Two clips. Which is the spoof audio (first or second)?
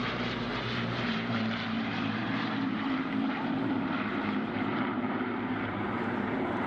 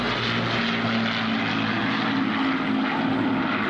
first